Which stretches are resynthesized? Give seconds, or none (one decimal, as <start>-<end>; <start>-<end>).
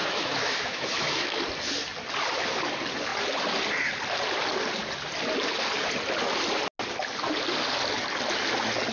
0.0-1.4